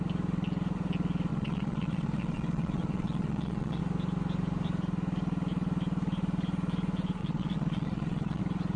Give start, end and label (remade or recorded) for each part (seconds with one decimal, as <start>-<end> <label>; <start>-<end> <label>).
0.0-1.3 recorded; 1.3-3.8 remade; 3.8-7.2 recorded; 7.2-8.4 remade; 8.4-8.8 recorded